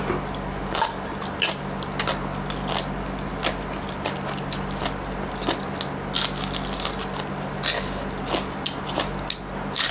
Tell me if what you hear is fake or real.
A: real